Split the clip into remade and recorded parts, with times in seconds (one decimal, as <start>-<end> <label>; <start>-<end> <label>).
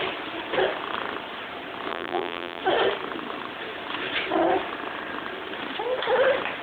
0.0-1.9 recorded; 1.9-2.6 remade; 2.6-6.6 recorded